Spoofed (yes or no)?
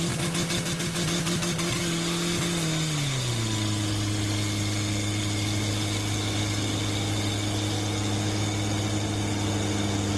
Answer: no